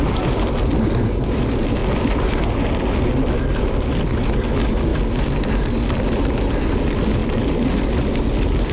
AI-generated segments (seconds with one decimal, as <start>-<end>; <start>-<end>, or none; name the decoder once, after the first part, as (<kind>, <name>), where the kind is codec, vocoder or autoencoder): none